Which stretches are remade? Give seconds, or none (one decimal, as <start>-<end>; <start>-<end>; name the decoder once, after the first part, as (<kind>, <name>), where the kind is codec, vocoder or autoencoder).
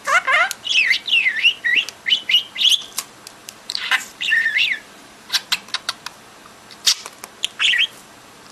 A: 3.4-5.3 (vocoder, BigVGAN v2)